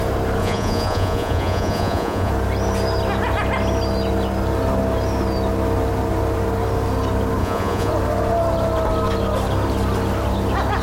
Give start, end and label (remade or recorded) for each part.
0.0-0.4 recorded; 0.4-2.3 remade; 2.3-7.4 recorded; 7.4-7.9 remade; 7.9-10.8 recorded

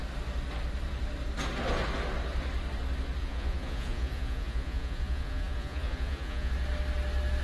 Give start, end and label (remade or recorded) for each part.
0.0-3.2 recorded; 3.2-6.5 remade; 6.5-7.4 recorded

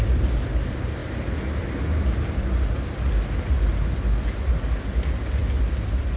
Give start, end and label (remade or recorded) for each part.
0.0-6.2 recorded